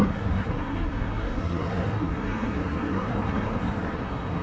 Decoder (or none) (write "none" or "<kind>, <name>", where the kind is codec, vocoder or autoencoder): codec, SNAC